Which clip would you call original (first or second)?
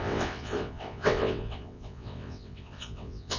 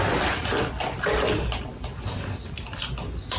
second